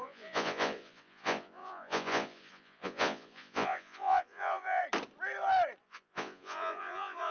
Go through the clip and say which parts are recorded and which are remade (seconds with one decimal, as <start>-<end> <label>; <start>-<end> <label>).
0.0-4.8 remade; 4.8-5.8 recorded; 5.8-7.3 remade